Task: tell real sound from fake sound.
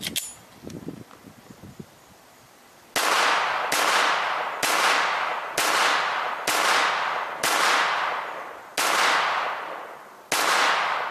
real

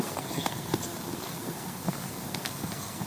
fake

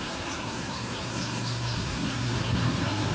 fake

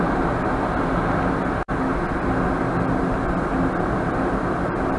real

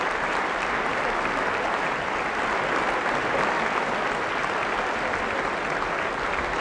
real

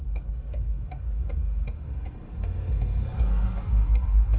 fake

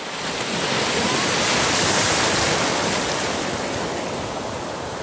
real